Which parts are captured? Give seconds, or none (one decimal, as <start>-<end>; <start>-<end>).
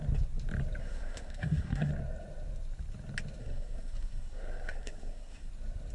0.0-0.8; 1.9-3.4; 5.5-5.9